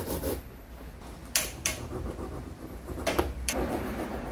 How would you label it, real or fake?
fake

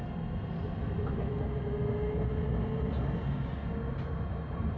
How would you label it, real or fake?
real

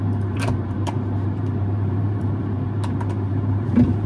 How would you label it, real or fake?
fake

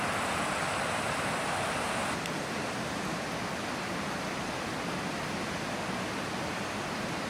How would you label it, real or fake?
real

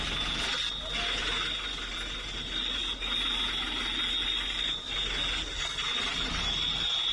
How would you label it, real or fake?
real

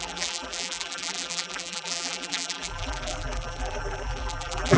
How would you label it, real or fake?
fake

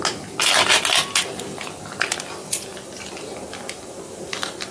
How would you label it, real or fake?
real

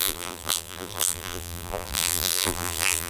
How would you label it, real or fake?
fake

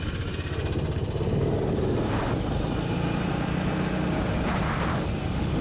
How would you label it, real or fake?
real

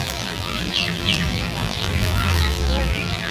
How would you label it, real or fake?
fake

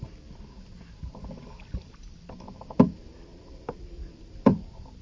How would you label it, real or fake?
fake